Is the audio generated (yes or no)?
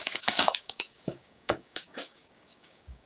yes